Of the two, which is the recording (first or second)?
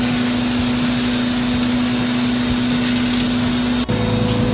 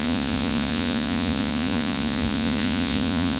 first